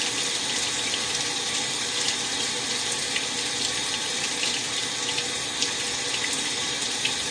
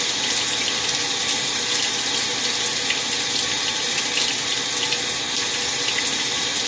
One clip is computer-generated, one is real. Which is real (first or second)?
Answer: second